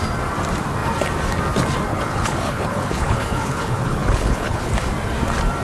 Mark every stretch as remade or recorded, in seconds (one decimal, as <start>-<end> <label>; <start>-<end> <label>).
0.0-1.9 recorded; 1.9-4.7 remade; 4.7-5.6 recorded